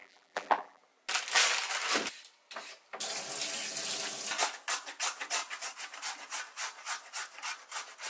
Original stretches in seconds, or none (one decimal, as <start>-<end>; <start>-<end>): 0.8-8.1